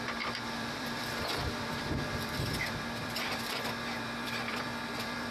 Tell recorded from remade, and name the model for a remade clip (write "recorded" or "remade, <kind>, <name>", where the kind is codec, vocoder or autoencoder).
remade, vocoder, BigVGAN v2